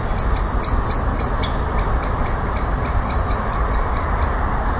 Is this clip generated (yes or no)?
no